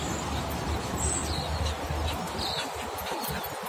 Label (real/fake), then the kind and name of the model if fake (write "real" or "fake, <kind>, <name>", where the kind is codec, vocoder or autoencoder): real